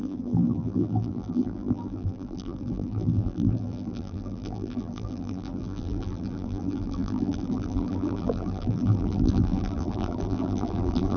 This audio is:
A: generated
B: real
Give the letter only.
A